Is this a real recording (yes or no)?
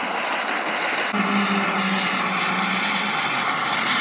yes